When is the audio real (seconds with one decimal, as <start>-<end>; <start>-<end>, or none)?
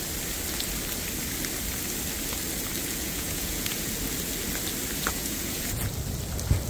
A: 0.0-2.8; 3.9-5.1; 5.9-6.7